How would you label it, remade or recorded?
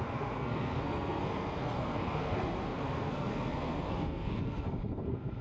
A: remade